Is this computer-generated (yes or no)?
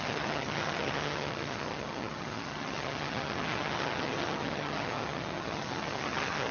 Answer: yes